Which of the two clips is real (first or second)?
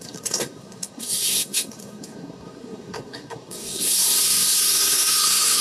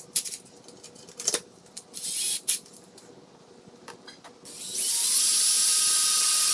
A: second